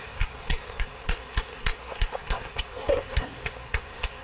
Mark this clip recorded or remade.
remade